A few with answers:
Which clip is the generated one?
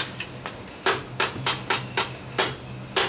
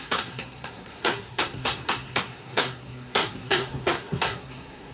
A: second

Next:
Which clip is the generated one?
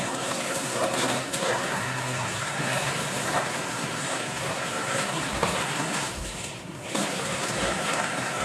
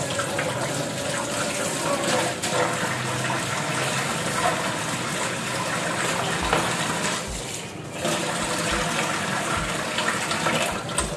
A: first